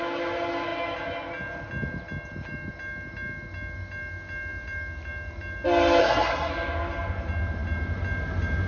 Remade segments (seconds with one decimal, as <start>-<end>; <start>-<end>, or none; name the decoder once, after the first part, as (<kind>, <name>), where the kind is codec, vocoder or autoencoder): 6.0-6.5 (codec, SNAC)